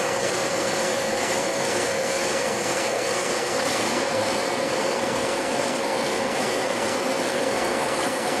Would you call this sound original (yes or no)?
no